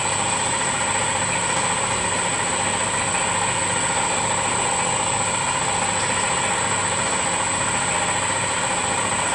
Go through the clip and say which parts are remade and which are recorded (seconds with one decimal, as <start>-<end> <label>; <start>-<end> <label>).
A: 0.0-9.3 recorded